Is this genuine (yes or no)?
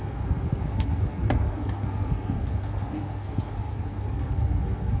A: no